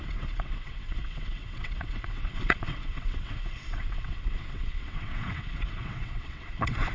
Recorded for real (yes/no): no